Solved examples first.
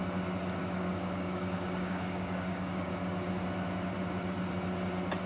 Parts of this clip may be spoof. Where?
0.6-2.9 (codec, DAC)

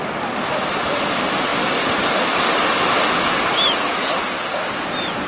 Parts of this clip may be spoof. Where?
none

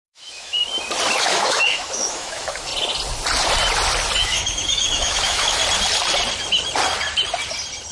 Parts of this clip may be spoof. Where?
0.0-0.6 (autoencoder, DAC-VAE); 1.2-2.7; 4.2-5.6